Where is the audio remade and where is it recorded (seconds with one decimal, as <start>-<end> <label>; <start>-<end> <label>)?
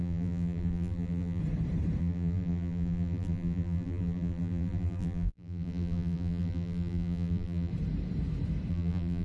0.0-1.4 remade; 1.4-2.0 recorded; 2.0-7.7 remade; 7.7-8.7 recorded; 8.7-9.2 remade